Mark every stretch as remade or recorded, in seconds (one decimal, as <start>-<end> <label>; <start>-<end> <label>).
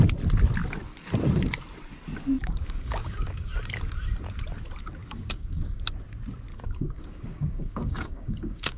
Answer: 0.0-2.4 recorded; 2.4-3.5 remade; 3.5-5.0 recorded; 5.0-5.7 remade; 5.7-6.5 recorded; 6.5-8.8 remade